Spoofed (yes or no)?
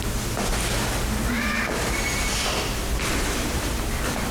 no